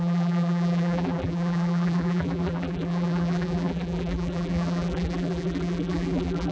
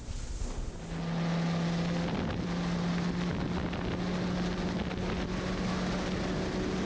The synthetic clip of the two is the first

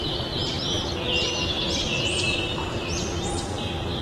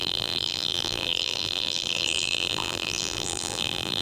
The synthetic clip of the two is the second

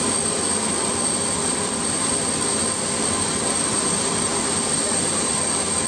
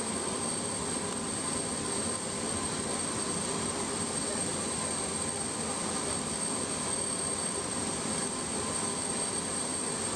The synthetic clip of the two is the second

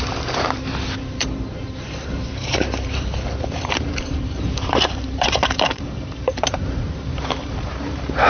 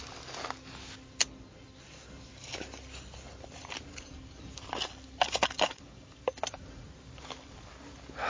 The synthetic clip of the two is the first